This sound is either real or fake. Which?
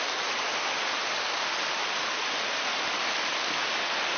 real